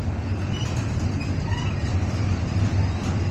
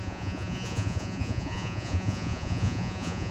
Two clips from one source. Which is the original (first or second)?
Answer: first